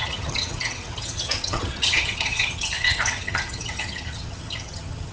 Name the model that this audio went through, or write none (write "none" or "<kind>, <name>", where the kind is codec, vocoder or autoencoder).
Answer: vocoder, HiFi-GAN